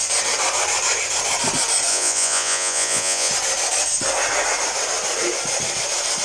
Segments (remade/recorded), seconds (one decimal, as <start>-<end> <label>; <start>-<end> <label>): 0.0-1.9 recorded; 1.9-3.3 remade; 3.3-6.2 recorded